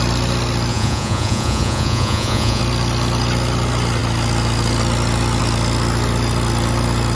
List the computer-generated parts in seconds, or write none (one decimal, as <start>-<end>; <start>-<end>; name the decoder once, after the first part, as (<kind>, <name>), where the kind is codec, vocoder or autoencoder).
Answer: 0.7-2.6 (vocoder, Vocos)